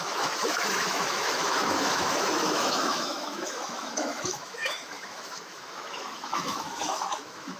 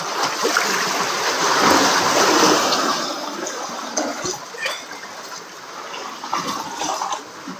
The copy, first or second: first